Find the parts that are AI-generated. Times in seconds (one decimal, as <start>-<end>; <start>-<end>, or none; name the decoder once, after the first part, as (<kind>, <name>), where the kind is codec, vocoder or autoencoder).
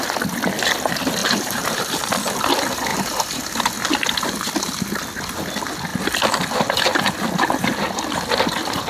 1.2-2.1 (vocoder, BigVGAN v2); 2.9-3.7